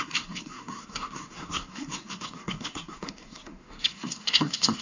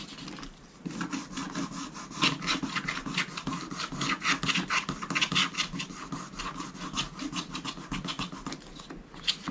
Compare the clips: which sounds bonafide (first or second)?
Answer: second